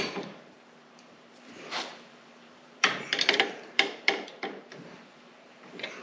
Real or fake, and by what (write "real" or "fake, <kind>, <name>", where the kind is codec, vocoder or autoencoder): fake, vocoder, BigVGAN v2